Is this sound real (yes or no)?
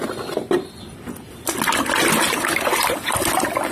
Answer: yes